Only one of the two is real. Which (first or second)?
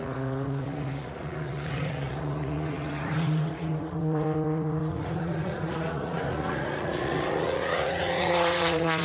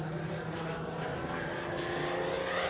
second